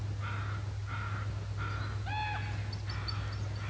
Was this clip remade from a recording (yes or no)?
no